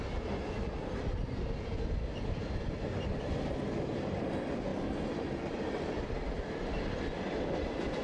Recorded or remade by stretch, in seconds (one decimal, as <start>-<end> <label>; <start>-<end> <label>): 0.0-8.0 recorded